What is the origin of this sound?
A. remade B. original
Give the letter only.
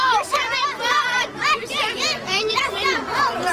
A